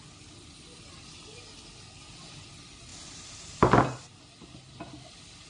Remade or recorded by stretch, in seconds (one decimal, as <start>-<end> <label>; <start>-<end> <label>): 0.0-2.9 recorded; 2.9-4.2 remade; 4.2-5.5 recorded

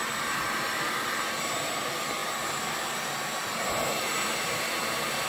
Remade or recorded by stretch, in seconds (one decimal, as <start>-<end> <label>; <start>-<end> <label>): 0.0-5.3 remade

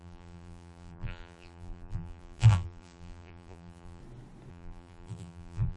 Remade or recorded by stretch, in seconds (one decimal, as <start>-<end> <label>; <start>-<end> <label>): 0.0-4.0 remade; 4.0-4.5 recorded; 4.5-5.8 remade

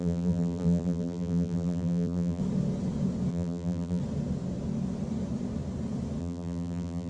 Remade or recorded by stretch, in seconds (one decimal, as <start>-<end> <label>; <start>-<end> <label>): 0.0-2.4 remade; 2.4-3.3 recorded; 3.3-4.0 remade; 4.0-6.2 recorded; 6.2-7.1 remade

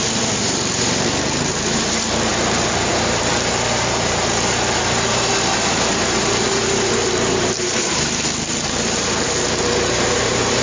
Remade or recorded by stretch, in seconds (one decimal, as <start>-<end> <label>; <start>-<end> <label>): 0.0-10.6 remade

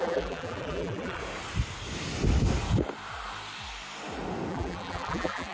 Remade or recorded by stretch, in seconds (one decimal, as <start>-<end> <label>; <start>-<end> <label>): 0.0-1.2 remade; 1.2-4.5 recorded; 4.5-5.5 remade